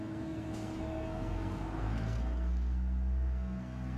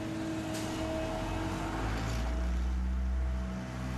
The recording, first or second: second